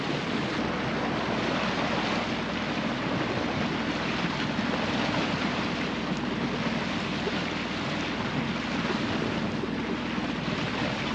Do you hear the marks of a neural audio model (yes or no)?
no